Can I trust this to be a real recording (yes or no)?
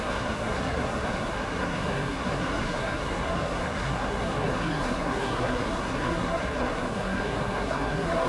no